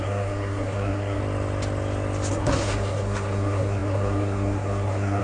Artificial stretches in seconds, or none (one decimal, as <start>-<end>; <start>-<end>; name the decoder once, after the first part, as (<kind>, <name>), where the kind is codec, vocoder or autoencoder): 0.0-1.2 (codec, SNAC); 2.3-5.2